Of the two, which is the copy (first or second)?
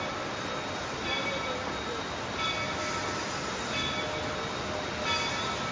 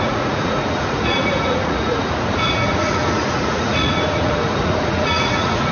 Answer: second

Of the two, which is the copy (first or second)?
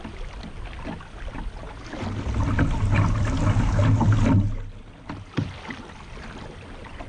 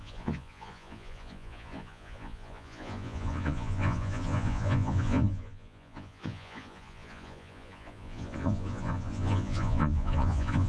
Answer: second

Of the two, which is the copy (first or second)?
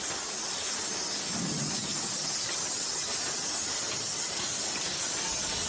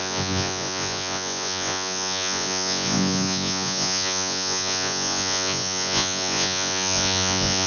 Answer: second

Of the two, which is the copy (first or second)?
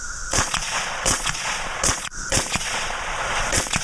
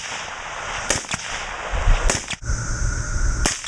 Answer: first